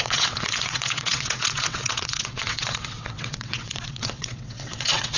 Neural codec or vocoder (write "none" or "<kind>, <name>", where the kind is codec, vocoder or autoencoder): vocoder, WaveNeXt